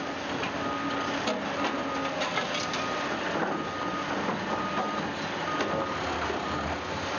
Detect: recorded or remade recorded